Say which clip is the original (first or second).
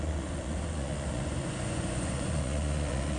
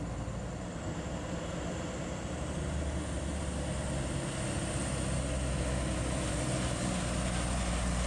second